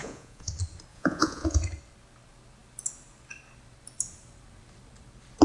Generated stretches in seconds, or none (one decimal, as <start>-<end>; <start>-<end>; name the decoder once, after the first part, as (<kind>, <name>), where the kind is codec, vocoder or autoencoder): 0.0-0.5 (vocoder, Vocos); 0.9-1.6